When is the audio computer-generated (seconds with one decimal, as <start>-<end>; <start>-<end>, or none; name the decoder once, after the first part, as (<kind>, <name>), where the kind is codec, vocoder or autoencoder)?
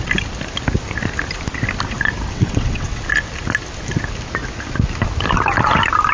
2.3-3.0 (vocoder, WaveNeXt)